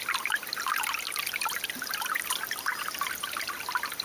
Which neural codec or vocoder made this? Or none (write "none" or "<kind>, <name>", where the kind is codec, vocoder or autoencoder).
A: none